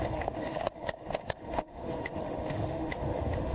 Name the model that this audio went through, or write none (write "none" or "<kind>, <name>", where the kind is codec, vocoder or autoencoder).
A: autoencoder, DAC-VAE